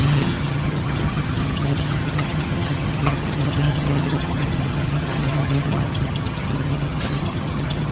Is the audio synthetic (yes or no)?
yes